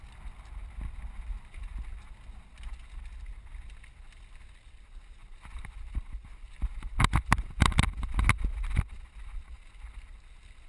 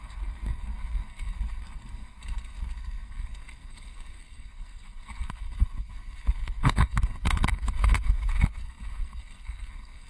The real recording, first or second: first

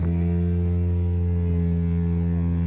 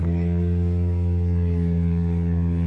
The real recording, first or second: first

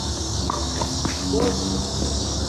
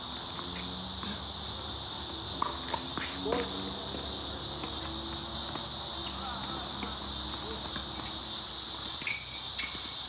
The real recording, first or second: second